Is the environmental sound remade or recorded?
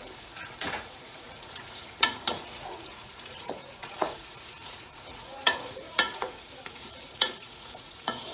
remade